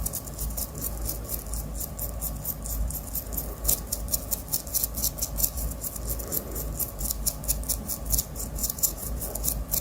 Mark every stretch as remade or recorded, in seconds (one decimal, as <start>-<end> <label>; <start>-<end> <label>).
0.0-8.6 recorded; 8.6-9.2 remade; 9.2-9.8 recorded